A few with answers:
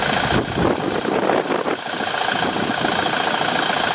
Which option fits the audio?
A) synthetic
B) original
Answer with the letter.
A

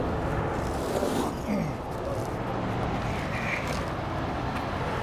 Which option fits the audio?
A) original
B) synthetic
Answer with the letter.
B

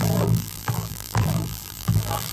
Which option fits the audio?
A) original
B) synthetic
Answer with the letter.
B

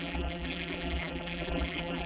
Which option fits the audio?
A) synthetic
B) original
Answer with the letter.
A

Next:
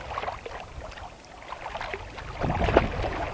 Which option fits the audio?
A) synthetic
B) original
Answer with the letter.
B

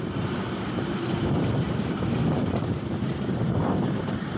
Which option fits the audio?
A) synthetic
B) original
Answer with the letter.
A